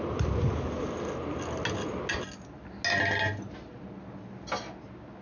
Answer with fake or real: real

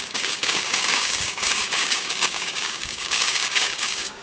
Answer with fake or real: fake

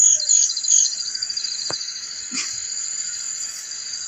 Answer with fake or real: fake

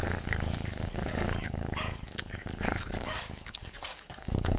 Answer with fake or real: fake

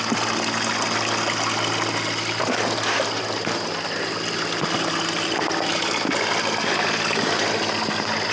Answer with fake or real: real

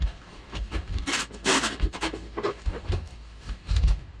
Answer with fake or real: fake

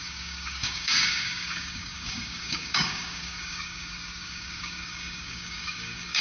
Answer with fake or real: fake